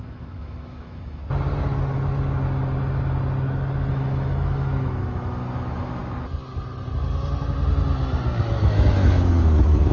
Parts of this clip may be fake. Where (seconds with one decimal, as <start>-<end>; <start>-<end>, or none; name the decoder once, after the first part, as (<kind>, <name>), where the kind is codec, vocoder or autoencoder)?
0.0-1.2 (autoencoder, DAC-VAE); 3.9-6.0; 8.6-9.9